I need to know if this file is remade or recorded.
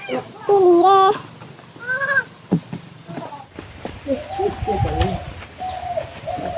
recorded